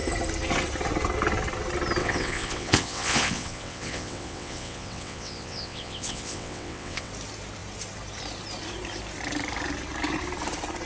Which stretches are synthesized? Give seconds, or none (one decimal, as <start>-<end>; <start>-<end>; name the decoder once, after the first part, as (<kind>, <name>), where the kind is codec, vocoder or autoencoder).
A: 2.0-7.1 (vocoder, WaveNeXt)